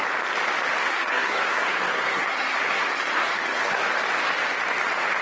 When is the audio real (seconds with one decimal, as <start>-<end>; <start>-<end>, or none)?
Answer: 0.0-0.8; 3.9-5.2